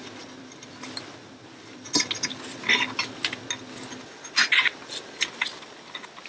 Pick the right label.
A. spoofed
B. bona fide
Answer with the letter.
B